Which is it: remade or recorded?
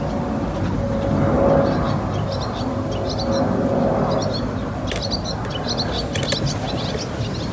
recorded